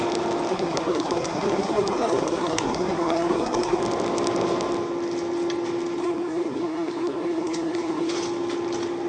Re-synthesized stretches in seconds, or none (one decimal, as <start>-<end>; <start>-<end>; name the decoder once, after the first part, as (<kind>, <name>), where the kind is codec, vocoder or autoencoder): 0.5-3.8 (codec, SNAC); 6.0-8.1